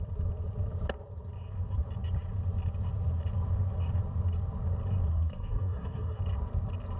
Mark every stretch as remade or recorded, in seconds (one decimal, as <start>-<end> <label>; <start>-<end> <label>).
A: 0.0-5.1 recorded; 5.1-6.2 remade; 6.2-7.0 recorded